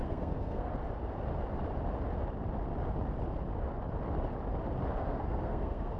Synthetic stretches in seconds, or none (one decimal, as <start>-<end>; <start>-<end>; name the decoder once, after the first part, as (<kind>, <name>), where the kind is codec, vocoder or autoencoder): 0.0-0.7 (codec, SNAC); 5.0-6.0